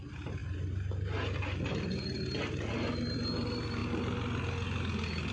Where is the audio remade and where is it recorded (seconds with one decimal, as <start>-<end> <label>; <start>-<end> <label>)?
0.0-5.3 recorded